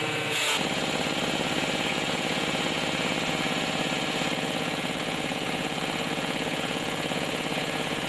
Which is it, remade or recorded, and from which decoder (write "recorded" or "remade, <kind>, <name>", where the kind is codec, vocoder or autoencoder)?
remade, vocoder, Vocos